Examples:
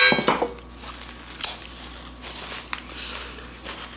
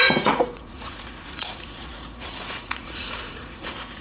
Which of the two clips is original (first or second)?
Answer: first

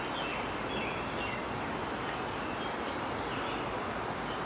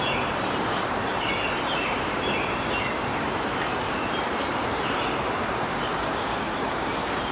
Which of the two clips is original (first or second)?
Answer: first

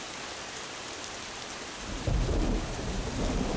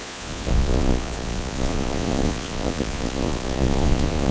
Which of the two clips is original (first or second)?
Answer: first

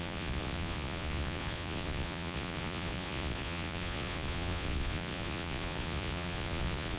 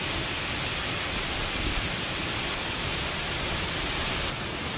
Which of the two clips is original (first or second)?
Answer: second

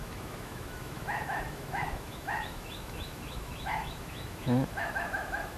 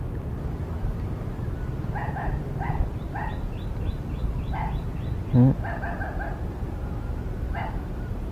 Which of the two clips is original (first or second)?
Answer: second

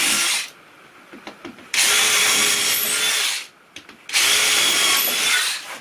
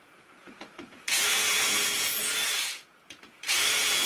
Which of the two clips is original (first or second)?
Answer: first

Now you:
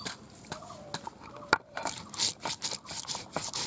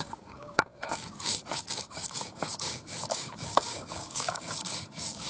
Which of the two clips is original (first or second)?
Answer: first